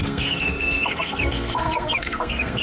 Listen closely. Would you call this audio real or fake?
fake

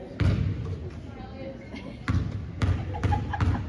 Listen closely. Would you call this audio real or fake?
real